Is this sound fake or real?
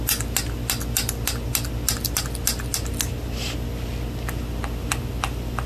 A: real